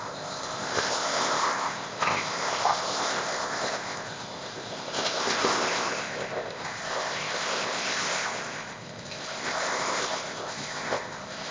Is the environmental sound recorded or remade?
remade